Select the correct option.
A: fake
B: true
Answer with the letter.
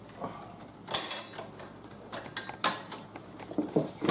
B